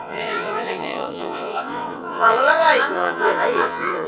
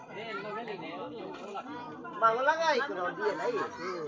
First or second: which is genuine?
second